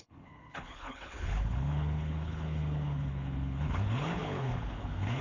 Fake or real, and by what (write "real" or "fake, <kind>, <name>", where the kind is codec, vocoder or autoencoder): fake, codec, HILCodec